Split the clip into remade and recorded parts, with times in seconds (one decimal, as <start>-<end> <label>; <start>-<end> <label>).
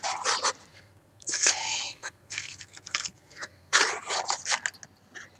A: 0.0-0.7 recorded; 0.7-3.8 remade; 3.8-5.4 recorded